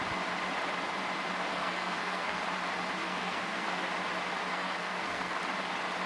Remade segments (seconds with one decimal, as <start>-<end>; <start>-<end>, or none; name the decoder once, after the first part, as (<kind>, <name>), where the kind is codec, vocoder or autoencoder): 1.5-2.4 (codec, SNAC); 3.0-3.9; 4.5-5.4